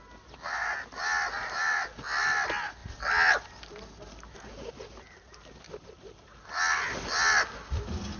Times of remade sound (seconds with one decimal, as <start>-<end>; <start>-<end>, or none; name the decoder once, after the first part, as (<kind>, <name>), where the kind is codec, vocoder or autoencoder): none